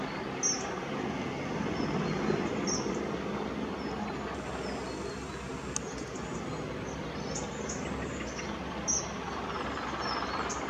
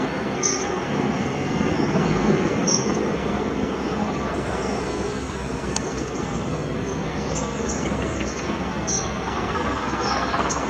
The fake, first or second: second